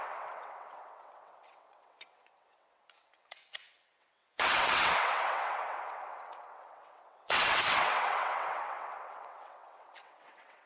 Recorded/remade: remade